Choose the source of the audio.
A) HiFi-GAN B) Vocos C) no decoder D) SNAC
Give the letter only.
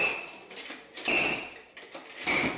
C